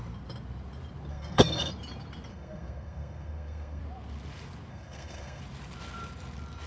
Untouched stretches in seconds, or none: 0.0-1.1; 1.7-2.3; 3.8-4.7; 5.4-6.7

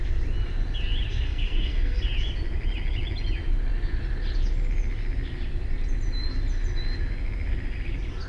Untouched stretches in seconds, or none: 0.0-1.1; 2.0-8.3

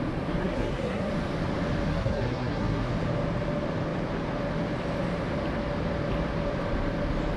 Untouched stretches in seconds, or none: 0.0-0.4; 1.1-1.9; 2.9-7.4

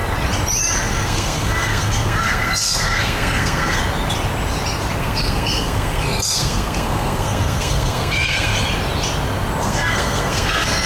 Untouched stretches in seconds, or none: 0.0-0.9; 3.8-5.0; 8.5-9.6

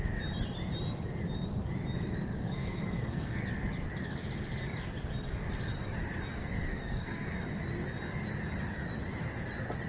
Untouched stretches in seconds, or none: 0.0-2.4; 3.4-6.4; 7.3-9.9